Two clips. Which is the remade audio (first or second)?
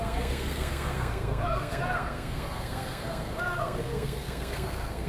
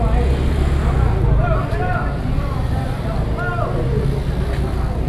first